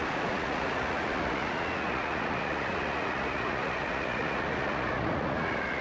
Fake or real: fake